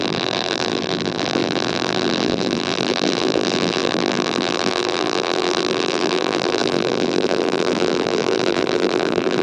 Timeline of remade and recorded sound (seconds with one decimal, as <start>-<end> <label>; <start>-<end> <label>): 0.0-9.4 remade